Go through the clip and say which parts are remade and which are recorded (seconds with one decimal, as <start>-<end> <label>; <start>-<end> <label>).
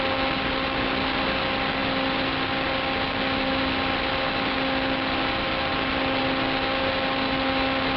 0.0-5.7 recorded; 5.7-6.2 remade; 6.2-8.0 recorded